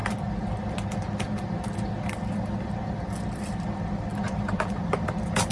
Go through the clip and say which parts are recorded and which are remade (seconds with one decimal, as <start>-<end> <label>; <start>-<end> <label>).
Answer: 0.0-4.1 recorded; 4.1-5.5 remade